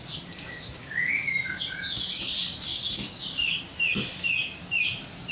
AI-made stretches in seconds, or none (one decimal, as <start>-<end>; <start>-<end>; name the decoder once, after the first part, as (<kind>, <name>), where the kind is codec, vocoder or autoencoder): 0.8-1.6 (codec, DAC); 2.7-3.6